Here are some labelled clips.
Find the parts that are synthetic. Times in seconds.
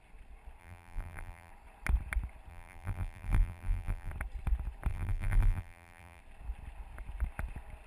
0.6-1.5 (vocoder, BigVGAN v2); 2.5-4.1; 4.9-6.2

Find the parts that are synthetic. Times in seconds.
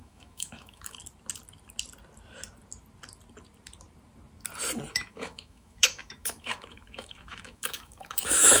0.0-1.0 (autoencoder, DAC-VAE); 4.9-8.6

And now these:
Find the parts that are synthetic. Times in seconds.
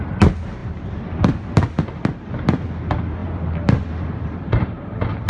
0.6-1.8 (vocoder, BigVGAN v2); 3.2-5.3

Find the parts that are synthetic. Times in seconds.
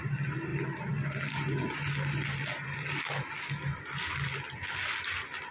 none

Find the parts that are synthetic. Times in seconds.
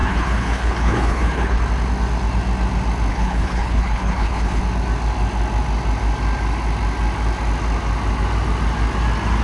0.0-1.6 (codec, HILCodec); 3.1-4.6